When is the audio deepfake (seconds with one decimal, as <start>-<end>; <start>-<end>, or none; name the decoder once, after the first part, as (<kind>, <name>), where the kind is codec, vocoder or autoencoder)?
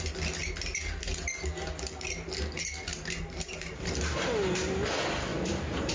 2.9-3.9 (vocoder, BigVGAN v2); 5.3-5.9